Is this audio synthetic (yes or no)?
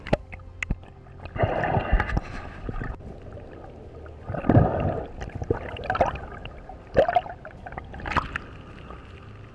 no